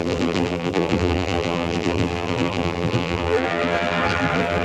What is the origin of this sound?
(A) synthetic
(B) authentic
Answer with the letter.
A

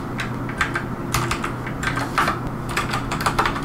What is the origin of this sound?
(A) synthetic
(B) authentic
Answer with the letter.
B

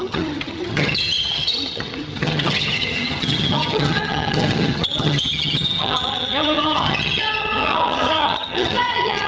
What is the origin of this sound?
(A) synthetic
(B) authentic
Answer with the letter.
A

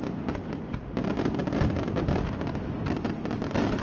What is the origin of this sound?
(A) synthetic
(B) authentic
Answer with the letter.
B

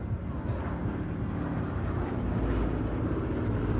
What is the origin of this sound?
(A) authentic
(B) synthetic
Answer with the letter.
A